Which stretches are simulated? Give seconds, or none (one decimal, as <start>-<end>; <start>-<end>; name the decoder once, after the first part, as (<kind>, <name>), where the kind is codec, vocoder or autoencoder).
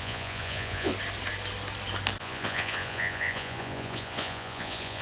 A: 0.0-0.9 (vocoder, Vocos); 2.2-5.0